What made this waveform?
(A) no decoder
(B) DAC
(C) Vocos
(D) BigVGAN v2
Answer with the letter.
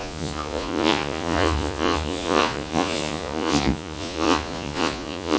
C